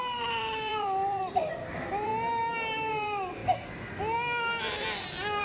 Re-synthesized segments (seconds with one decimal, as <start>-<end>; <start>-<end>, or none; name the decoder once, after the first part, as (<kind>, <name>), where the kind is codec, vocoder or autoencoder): 0.0-2.1 (vocoder, BigVGAN v2); 2.9-3.4

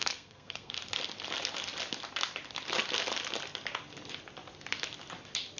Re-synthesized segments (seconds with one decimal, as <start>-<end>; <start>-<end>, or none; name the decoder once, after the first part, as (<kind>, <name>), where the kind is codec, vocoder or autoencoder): 0.0-0.8 (codec, SNAC)

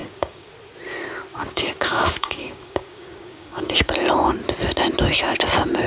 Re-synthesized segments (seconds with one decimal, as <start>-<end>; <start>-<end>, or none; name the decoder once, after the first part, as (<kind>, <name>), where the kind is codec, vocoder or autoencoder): 0.0-0.5 (codec, DAC); 1.3-3.9

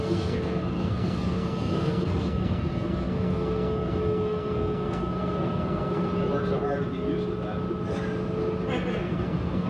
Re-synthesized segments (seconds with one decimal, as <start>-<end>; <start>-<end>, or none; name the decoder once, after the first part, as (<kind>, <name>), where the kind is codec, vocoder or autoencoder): 0.0-6.1 (codec, SNAC); 8.9-9.7

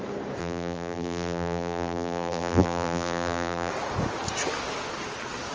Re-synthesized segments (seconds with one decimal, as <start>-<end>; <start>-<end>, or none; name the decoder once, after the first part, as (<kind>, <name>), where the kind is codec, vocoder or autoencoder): 0.4-3.7 (vocoder, BigVGAN v2)

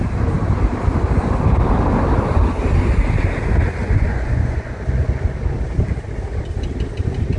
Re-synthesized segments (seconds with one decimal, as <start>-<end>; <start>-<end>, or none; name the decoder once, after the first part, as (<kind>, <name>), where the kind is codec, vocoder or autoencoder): 3.8-4.8 (vocoder, Vocos)

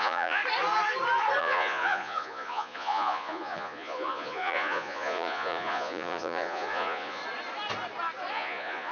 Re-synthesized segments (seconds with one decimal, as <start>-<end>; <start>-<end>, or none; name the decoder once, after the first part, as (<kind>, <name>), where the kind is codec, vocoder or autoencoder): 0.0-0.4 (vocoder, Vocos); 1.4-7.2; 8.3-8.9